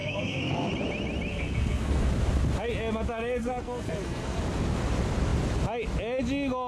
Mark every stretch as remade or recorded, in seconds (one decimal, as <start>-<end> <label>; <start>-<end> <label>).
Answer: 0.0-0.7 remade; 0.7-1.3 recorded; 1.3-2.1 remade; 2.1-3.4 recorded; 3.4-4.4 remade; 4.4-6.7 recorded